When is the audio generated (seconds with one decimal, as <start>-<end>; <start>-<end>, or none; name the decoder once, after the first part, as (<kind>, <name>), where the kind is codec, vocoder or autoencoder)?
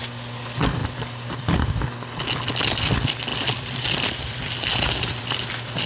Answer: 0.8-1.8 (vocoder, BigVGAN v2); 3.3-5.2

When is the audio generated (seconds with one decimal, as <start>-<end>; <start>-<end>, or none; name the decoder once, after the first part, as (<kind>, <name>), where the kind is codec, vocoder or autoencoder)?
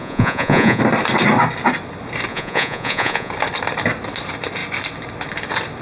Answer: 0.0-0.8 (vocoder, Vocos); 2.3-3.3